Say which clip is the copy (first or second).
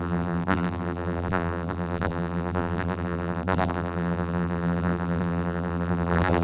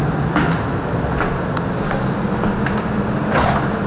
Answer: first